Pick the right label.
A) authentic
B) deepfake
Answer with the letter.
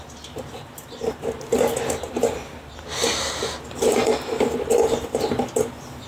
A